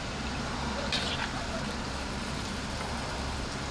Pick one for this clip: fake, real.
fake